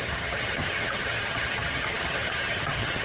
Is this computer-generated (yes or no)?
yes